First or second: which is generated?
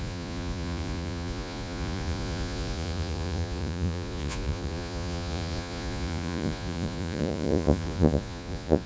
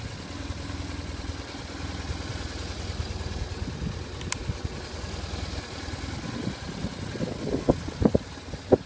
first